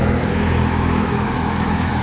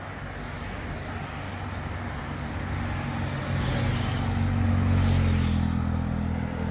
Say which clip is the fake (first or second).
first